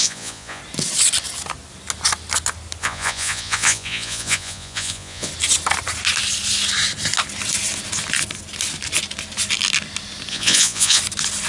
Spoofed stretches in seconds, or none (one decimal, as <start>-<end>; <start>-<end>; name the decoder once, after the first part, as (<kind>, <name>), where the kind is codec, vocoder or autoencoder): 0.0-0.6 (vocoder, Vocos); 2.8-5.3; 10.3-11.0